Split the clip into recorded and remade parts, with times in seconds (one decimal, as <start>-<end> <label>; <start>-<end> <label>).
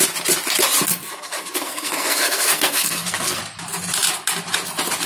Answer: 0.0-0.9 recorded; 0.9-3.4 remade; 3.4-5.1 recorded